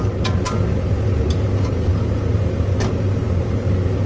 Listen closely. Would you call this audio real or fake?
real